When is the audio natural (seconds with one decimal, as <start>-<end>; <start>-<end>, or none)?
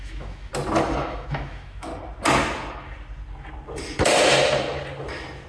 0.5-1.0; 1.9-5.5